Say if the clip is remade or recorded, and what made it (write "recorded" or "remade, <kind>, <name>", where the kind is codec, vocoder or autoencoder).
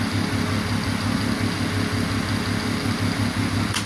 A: recorded